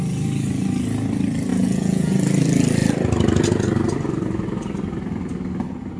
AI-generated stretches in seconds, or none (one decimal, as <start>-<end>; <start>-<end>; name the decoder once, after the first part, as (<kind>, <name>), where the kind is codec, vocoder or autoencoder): 1.5-2.1 (vocoder, Vocos)